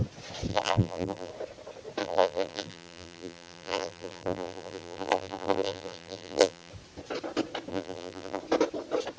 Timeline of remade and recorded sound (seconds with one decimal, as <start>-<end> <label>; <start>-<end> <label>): 0.0-0.5 recorded; 0.5-1.3 remade; 1.3-2.0 recorded; 2.0-6.7 remade; 6.7-7.7 recorded; 7.7-8.4 remade; 8.4-9.2 recorded